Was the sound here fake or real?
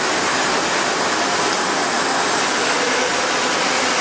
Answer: real